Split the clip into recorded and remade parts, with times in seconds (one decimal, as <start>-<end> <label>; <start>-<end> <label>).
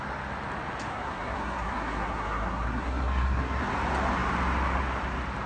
0.0-0.9 recorded; 0.9-3.6 remade; 3.6-5.5 recorded